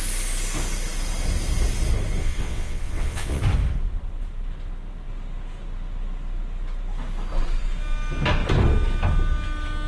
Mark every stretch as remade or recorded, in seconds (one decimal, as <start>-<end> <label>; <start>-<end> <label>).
0.0-2.2 recorded; 2.2-3.4 remade; 3.4-9.9 recorded